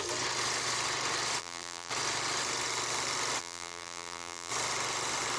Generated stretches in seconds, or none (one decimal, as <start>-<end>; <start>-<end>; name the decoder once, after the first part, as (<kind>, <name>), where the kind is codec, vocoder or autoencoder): 1.4-1.9 (vocoder, BigVGAN v2); 3.4-4.5